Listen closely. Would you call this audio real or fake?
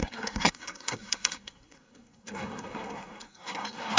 fake